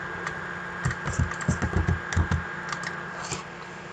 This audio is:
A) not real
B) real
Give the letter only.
B